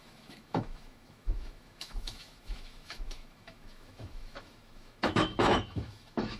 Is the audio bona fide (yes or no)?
no